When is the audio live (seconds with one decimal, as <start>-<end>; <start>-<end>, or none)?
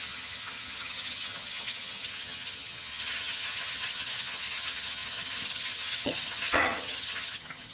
none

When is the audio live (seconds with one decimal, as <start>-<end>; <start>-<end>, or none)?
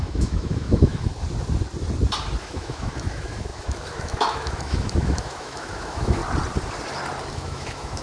1.1-2.4; 6.2-7.3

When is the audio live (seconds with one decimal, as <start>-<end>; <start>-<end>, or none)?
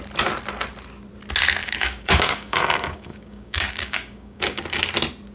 0.0-1.6; 4.8-5.3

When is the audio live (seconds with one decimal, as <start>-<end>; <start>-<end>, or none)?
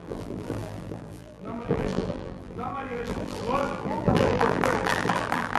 none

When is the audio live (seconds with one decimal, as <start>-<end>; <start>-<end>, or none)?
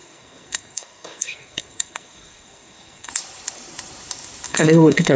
3.1-4.5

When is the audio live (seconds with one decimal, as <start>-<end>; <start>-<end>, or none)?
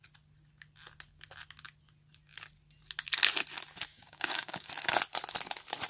0.0-3.9; 4.7-5.9